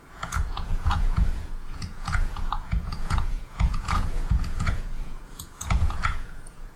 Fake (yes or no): yes